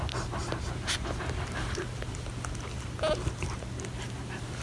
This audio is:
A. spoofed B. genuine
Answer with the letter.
B